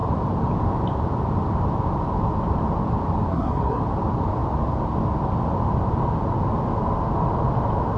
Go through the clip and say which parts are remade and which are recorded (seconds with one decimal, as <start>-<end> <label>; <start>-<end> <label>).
0.0-3.3 recorded; 3.3-3.8 remade; 3.8-8.0 recorded